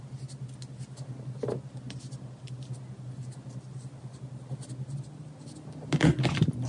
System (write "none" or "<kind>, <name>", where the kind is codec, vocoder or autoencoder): none